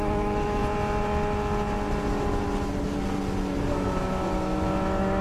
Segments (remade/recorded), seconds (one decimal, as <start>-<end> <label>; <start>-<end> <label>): 0.0-0.6 remade; 0.6-3.7 recorded; 3.7-5.2 remade